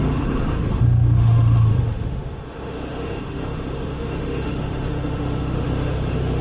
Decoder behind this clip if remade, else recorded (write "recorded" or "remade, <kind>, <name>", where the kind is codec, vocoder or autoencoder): remade, autoencoder, DAC-VAE